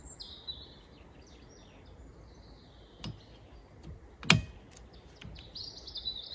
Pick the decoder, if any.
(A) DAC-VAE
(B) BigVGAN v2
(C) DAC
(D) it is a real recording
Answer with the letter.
D